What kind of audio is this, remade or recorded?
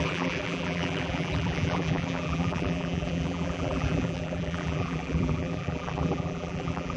remade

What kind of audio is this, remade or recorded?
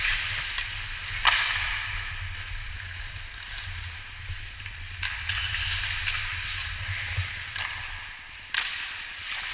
recorded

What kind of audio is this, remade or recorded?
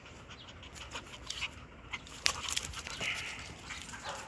remade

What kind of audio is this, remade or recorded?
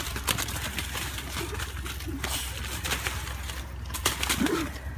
recorded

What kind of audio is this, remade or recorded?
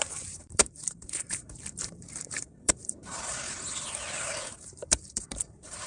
remade